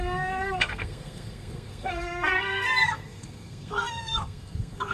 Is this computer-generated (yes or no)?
yes